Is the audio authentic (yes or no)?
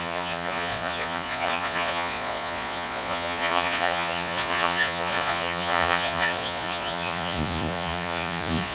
no